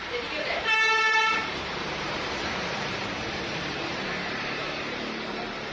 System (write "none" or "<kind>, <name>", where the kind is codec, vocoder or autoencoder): vocoder, BigVGAN v2